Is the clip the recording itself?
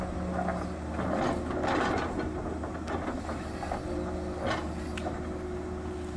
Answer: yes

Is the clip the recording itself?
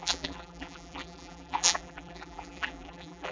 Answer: no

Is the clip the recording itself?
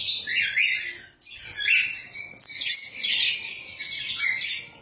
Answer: yes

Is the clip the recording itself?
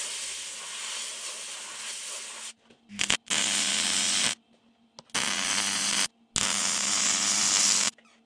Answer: yes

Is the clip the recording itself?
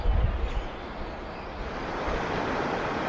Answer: yes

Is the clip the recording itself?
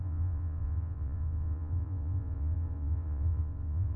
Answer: no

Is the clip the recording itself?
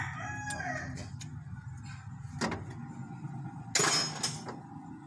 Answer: yes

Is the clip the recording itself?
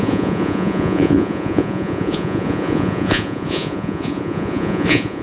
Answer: no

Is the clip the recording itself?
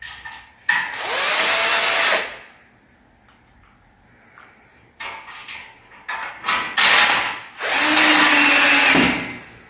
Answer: yes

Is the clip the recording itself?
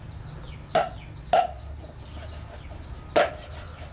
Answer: yes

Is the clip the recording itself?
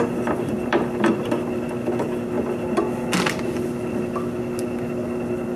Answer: yes